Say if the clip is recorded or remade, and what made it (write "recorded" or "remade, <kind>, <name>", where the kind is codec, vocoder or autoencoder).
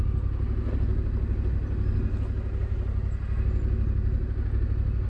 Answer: recorded